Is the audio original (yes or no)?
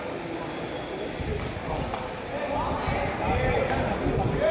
yes